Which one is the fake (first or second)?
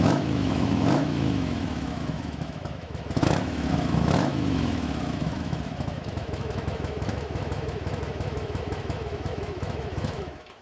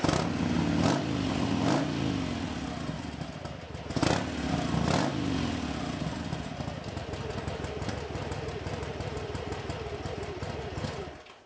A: first